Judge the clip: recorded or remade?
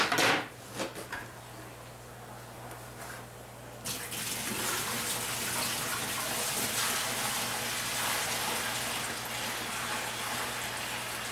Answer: recorded